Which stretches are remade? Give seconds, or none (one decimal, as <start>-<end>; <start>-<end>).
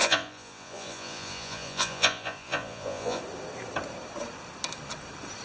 0.0-3.2